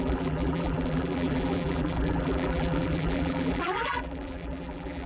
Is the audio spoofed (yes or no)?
yes